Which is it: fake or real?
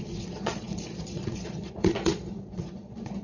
fake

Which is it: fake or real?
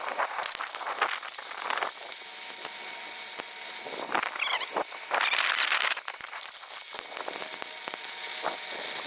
real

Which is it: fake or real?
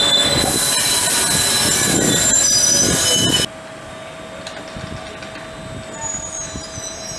real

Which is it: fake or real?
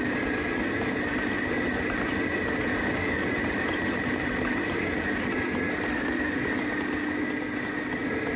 real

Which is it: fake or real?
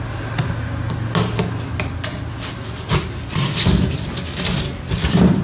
real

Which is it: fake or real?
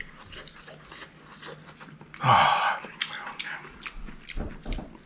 real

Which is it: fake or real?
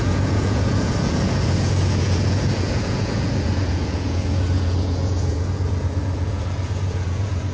fake